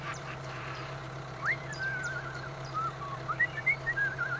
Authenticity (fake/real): fake